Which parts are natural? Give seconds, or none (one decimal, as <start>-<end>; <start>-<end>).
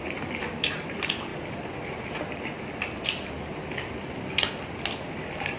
0.0-5.6